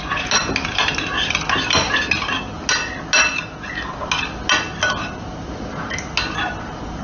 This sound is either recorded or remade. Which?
recorded